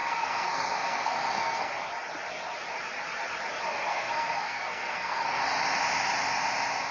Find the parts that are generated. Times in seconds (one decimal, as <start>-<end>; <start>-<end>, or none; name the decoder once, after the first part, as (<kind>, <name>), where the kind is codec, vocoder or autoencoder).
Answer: 0.0-1.7 (codec, SNAC); 3.9-5.4